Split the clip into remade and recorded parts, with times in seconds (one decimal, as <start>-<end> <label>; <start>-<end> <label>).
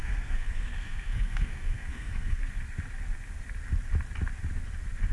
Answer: 0.0-2.4 remade; 2.4-5.1 recorded